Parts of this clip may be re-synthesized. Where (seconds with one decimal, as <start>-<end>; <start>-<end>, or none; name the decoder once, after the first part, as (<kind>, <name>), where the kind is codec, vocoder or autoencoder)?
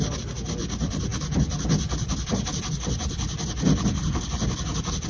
none